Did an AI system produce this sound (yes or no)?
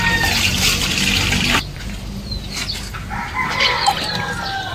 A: no